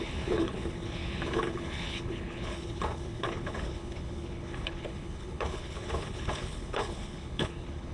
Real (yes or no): no